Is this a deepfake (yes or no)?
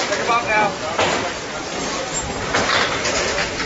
no